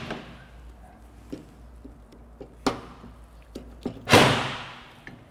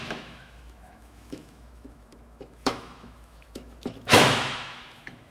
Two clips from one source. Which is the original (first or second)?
first